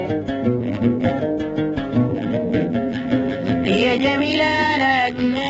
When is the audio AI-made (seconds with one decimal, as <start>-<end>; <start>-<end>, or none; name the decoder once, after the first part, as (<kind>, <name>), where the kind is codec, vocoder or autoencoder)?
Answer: 0.6-1.1 (vocoder, BigVGAN v2); 2.1-5.5